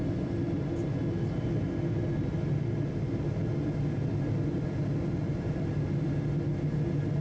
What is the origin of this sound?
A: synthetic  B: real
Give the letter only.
B